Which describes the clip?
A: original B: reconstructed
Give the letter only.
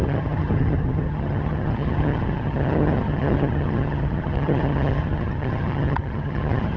B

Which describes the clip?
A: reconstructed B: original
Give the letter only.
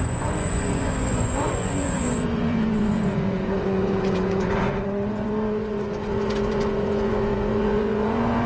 A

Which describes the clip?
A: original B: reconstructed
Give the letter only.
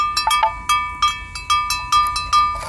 A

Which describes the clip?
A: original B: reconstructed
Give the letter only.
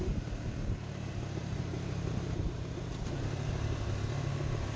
B